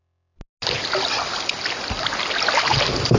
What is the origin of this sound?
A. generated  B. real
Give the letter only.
B